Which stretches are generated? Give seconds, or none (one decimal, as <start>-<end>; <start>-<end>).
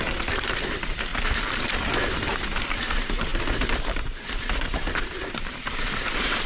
0.0-1.1; 1.6-6.5